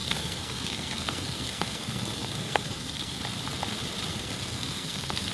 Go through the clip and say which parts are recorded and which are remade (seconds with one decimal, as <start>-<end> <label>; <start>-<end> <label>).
0.0-3.2 remade; 3.2-4.1 recorded; 4.1-5.3 remade